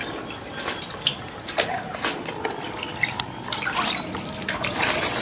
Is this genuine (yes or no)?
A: yes